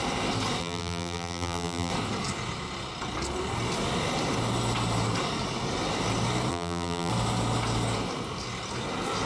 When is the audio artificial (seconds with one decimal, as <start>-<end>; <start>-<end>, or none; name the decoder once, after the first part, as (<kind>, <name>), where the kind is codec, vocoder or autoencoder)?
0.6-1.9 (vocoder, BigVGAN v2); 6.5-7.1